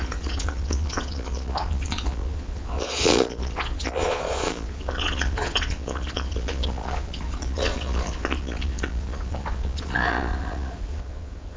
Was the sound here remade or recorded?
remade